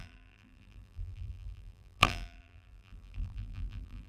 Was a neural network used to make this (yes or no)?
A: yes